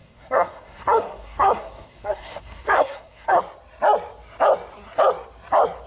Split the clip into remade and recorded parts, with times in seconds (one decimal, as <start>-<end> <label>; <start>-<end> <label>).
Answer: 0.0-3.4 remade; 3.4-5.9 recorded

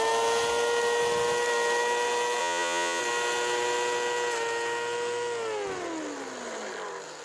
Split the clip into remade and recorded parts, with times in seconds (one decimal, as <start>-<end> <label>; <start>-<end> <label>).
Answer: 0.0-2.4 recorded; 2.4-3.0 remade; 3.0-7.2 recorded

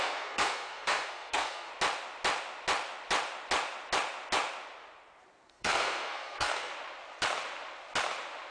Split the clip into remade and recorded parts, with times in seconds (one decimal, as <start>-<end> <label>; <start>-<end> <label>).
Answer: 0.0-1.7 remade; 1.7-5.5 recorded; 5.5-6.7 remade; 6.7-8.5 recorded

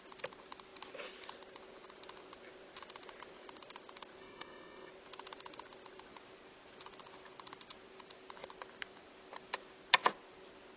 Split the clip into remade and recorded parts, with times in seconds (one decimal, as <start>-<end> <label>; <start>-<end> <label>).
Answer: 0.0-4.2 recorded; 4.2-4.9 remade; 4.9-10.8 recorded